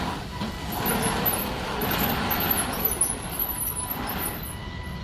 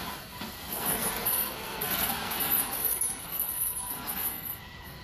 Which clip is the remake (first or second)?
second